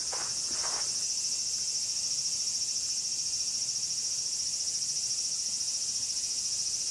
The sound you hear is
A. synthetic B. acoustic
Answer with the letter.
B